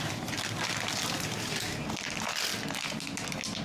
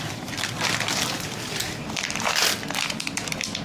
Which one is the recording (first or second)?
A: first